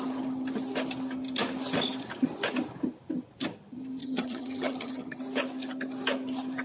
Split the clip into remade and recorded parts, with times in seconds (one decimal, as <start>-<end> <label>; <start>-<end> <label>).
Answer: 0.0-4.0 recorded; 4.0-5.2 remade; 5.2-6.6 recorded